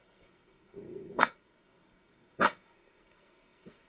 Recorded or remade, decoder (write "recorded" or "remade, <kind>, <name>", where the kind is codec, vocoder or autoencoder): remade, codec, SNAC